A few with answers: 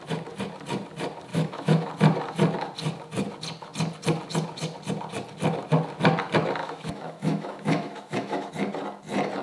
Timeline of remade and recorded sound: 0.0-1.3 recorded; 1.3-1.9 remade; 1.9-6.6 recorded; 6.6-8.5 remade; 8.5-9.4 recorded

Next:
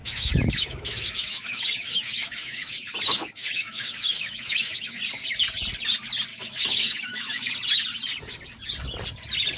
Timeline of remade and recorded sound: 0.0-5.0 remade; 5.0-6.3 recorded; 6.3-7.5 remade; 7.5-9.6 recorded

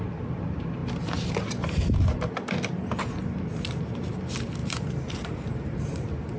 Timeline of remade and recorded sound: 0.0-4.6 recorded; 4.6-5.9 remade; 5.9-6.4 recorded